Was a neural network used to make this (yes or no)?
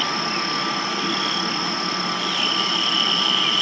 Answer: no